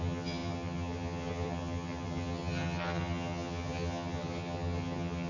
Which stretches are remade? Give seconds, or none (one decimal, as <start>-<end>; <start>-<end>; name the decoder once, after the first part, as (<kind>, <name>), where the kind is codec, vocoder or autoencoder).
0.0-5.3 (vocoder, HiFi-GAN)